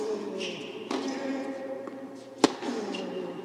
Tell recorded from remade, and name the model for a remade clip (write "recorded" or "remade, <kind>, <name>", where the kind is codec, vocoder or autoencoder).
recorded